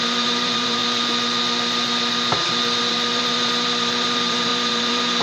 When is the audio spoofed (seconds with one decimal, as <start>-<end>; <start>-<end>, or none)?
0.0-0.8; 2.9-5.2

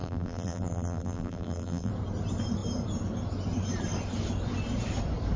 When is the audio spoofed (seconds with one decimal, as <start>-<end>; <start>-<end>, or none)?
0.0-1.9

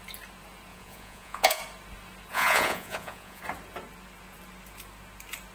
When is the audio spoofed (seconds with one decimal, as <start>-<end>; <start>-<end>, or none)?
0.7-1.6; 2.3-3.4